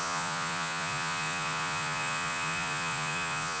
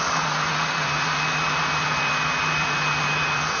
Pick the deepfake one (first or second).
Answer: first